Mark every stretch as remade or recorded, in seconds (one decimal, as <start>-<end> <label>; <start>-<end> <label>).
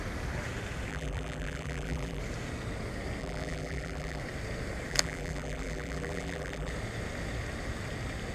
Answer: 0.0-0.9 recorded; 0.9-2.2 remade; 2.2-3.2 recorded; 3.2-4.2 remade; 4.2-4.9 recorded; 4.9-6.7 remade; 6.7-8.3 recorded